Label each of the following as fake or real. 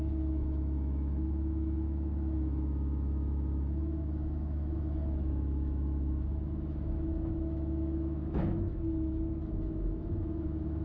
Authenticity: fake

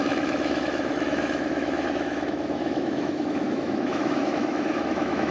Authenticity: fake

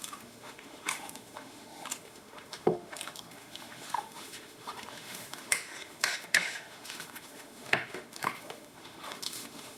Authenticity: fake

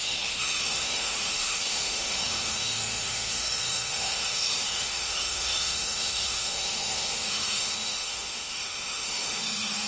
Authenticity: fake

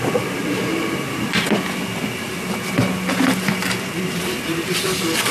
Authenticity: real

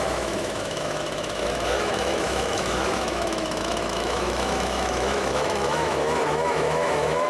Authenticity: fake